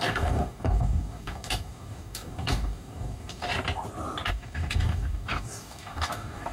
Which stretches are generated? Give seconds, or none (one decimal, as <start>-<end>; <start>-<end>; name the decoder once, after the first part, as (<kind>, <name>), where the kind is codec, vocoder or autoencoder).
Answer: 0.0-3.5 (codec, DAC); 4.3-6.5